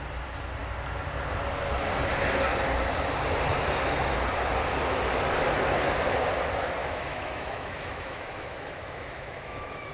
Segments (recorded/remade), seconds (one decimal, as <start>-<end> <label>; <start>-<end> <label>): 0.0-6.8 recorded; 6.8-9.9 remade